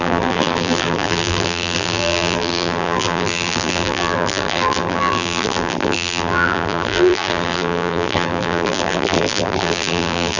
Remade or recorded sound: remade